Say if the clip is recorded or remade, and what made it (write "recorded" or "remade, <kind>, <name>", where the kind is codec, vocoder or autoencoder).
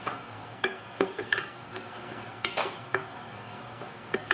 remade, codec, SNAC